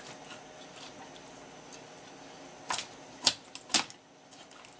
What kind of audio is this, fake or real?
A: real